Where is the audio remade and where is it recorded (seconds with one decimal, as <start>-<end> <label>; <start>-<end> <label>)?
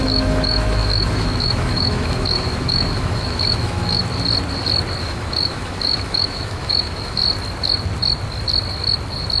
0.0-4.0 remade; 4.0-5.0 recorded; 5.0-7.2 remade; 7.2-9.4 recorded